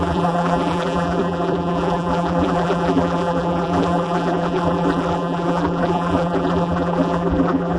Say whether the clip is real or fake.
fake